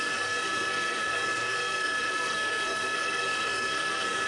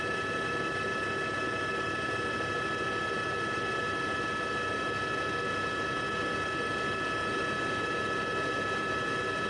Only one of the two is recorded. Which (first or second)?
second